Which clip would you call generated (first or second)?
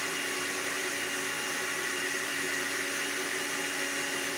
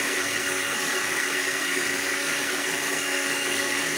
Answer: second